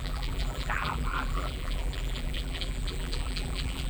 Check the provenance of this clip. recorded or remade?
remade